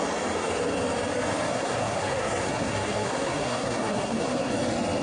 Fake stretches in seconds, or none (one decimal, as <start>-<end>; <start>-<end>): 1.5-4.5